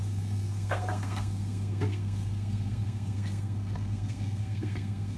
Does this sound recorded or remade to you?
remade